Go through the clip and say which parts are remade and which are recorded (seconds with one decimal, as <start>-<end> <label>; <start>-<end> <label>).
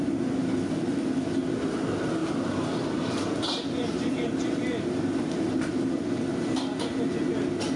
0.0-7.8 recorded